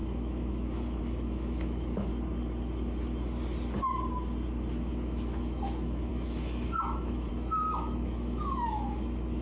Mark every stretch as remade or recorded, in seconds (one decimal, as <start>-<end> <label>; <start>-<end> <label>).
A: 0.0-2.1 remade; 2.1-4.9 recorded; 4.9-9.4 remade